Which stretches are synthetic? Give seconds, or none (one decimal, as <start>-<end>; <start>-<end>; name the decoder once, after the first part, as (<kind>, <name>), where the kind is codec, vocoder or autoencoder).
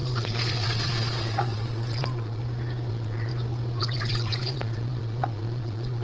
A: 0.0-2.4 (vocoder, Vocos); 2.9-3.3; 3.8-6.0